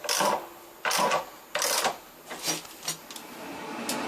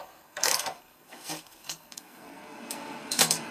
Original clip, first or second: first